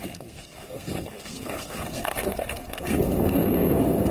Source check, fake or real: fake